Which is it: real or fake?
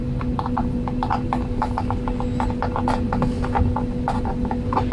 real